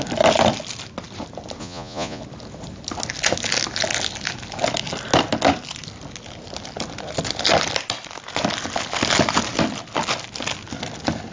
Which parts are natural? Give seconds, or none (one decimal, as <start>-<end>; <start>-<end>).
0.0-1.6; 2.2-11.3